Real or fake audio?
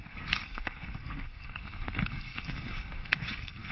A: fake